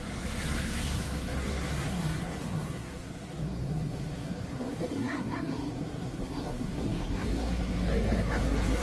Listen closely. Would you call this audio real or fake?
fake